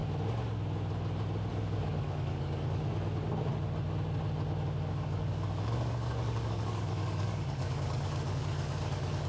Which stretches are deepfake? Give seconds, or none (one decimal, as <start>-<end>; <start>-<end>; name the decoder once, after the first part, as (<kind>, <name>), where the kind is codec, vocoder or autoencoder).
1.5-2.9 (codec, DAC); 4.9-9.3